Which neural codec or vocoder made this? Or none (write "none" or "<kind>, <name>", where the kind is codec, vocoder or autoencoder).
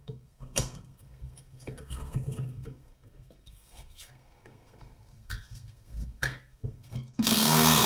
codec, SNAC